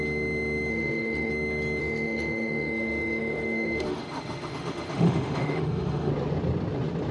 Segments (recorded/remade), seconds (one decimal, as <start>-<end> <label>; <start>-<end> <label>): 0.0-0.7 recorded; 0.7-1.3 remade; 1.3-1.8 recorded; 1.8-6.1 remade; 6.1-7.1 recorded